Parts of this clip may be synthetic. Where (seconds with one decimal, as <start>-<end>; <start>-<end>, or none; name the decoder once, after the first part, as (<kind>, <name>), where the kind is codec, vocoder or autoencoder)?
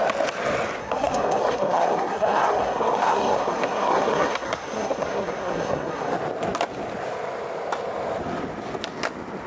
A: 0.8-6.1 (codec, SNAC)